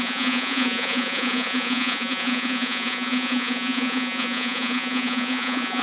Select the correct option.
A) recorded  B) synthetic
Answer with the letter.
B